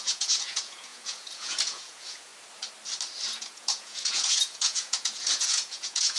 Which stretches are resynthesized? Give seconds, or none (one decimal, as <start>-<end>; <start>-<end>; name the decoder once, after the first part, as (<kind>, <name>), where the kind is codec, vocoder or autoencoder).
0.0-2.3 (vocoder, Vocos); 3.3-6.2